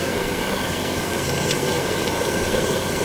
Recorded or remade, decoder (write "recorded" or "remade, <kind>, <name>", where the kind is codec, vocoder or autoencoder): remade, codec, SNAC